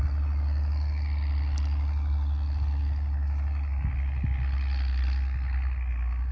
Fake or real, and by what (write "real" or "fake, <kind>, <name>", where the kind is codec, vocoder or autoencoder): real